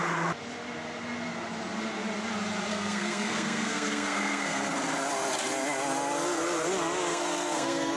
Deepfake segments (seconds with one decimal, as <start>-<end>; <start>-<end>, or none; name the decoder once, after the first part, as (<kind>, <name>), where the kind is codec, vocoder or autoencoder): 2.7-4.7 (codec, SNAC); 7.1-8.0